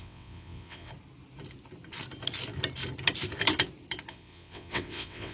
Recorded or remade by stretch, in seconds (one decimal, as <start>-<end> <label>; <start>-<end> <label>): 0.0-0.9 remade; 0.9-4.1 recorded; 4.1-5.3 remade